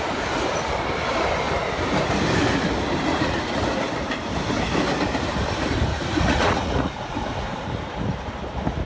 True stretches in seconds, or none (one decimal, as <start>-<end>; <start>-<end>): 0.0-3.1; 3.6-5.9; 7.2-8.9